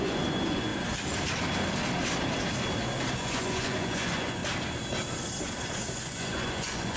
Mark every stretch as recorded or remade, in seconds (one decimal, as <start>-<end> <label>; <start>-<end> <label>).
0.0-0.7 remade; 0.7-3.2 recorded; 3.2-4.4 remade; 4.4-5.9 recorded; 5.9-7.0 remade